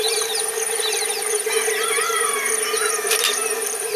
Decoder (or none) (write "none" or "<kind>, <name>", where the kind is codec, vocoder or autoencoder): vocoder, BigVGAN v2